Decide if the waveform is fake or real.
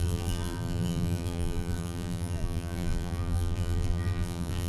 fake